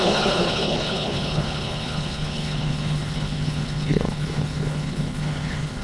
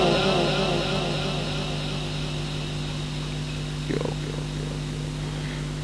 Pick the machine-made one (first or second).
first